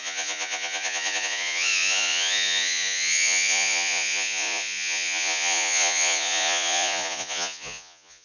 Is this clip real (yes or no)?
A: no